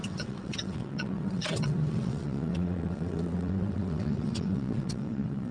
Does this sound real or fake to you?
fake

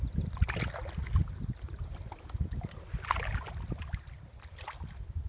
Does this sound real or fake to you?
real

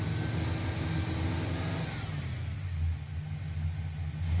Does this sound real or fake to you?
real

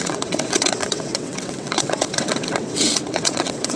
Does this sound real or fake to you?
fake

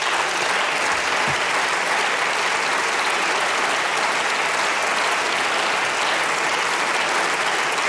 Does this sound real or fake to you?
real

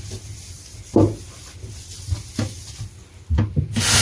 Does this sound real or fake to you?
real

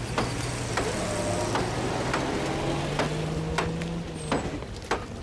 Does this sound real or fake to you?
real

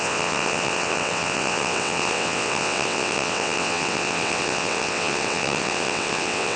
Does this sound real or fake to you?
fake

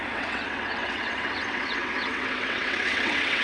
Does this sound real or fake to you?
fake